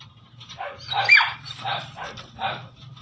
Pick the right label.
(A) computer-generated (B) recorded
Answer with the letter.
A